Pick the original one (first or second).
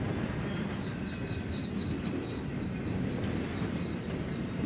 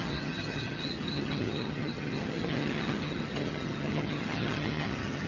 first